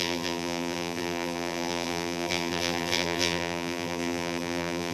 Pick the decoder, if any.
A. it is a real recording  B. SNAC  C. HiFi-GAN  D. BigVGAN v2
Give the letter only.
D